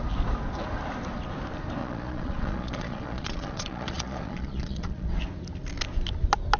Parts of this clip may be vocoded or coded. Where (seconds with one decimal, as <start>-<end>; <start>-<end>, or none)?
1.8-5.2